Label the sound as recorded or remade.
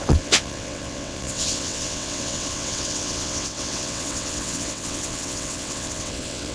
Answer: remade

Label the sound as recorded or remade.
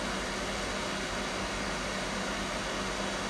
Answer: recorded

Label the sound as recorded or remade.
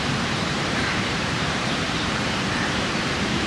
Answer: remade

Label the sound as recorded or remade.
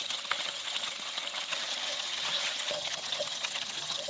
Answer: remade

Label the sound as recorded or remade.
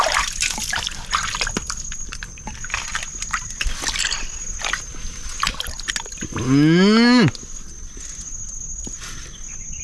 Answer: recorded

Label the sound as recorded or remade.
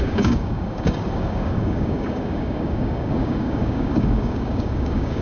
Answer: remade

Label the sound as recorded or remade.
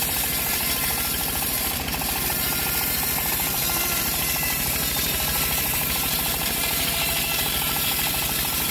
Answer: remade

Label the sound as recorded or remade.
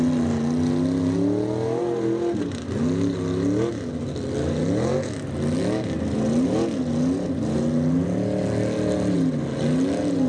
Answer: recorded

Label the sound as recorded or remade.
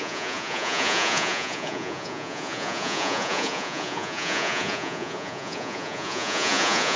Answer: remade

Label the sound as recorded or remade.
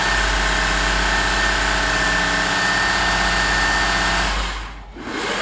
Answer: recorded